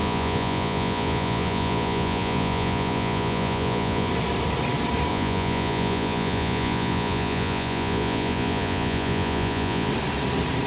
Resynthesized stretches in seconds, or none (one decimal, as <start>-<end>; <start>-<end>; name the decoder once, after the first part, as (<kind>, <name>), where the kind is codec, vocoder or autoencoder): 0.0-4.1 (vocoder, Vocos); 5.1-9.9